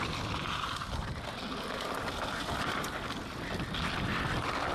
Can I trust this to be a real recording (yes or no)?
yes